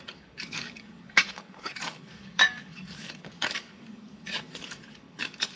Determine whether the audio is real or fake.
fake